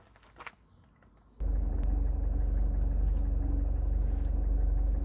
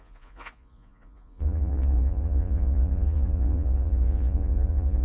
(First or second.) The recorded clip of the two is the first